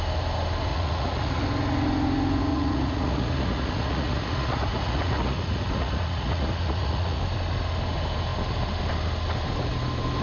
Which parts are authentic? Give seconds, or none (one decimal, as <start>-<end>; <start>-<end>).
0.0-0.7; 1.4-2.5; 7.2-10.2